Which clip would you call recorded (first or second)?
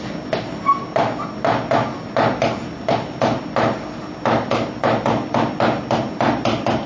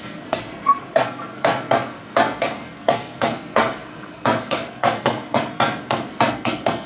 first